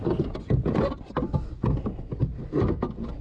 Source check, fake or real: real